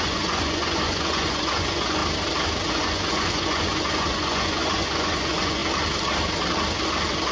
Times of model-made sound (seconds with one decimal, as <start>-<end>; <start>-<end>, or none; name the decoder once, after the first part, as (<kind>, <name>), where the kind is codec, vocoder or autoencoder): 0.0-2.0 (vocoder, Vocos); 2.7-5.6